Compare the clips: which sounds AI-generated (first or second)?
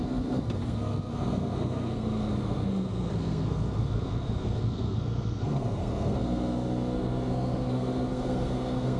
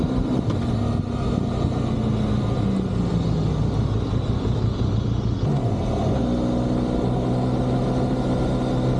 first